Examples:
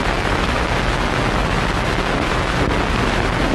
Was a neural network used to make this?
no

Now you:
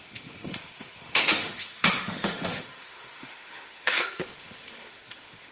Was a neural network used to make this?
yes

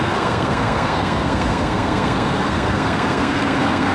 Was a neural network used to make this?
yes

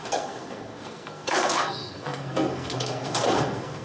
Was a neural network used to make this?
yes